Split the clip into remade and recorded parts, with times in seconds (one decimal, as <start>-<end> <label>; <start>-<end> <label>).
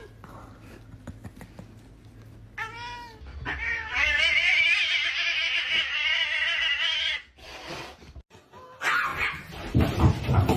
0.0-9.1 recorded; 9.1-10.6 remade